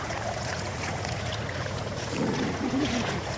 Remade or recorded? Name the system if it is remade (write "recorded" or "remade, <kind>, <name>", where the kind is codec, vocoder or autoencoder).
remade, vocoder, Vocos